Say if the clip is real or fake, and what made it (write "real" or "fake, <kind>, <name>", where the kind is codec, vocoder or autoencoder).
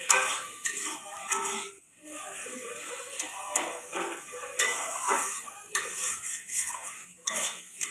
fake, codec, SNAC